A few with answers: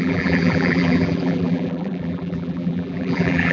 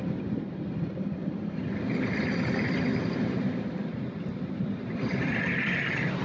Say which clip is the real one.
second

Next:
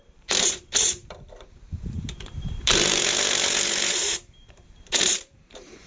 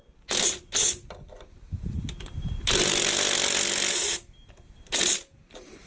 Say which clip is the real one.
second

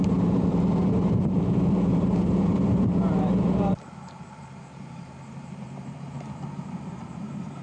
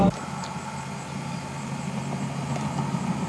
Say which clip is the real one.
second